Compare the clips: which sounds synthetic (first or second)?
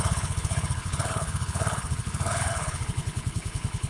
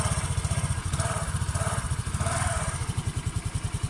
first